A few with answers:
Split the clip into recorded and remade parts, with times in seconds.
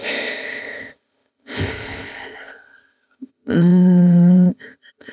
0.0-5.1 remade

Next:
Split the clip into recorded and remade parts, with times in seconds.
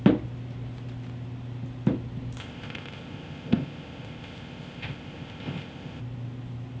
0.0-2.4 recorded; 2.4-6.0 remade; 6.0-6.8 recorded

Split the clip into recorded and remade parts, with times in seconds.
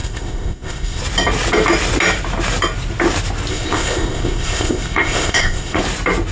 0.0-1.0 remade; 1.0-3.5 recorded; 3.5-5.8 remade; 5.8-6.3 recorded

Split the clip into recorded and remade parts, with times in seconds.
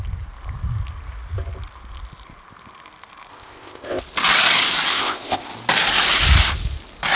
0.0-3.3 recorded; 3.3-4.0 remade; 4.0-4.9 recorded; 4.9-5.5 remade; 5.5-7.2 recorded